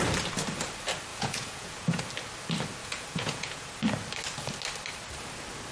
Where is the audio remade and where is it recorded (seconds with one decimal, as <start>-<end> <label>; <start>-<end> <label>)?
0.0-1.1 recorded; 1.1-2.0 remade; 2.0-2.8 recorded; 2.8-3.7 remade; 3.7-5.7 recorded